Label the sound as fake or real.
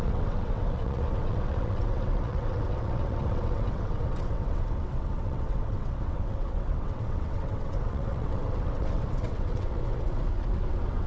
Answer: fake